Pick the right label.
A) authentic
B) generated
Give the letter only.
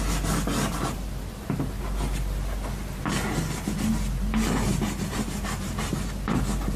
A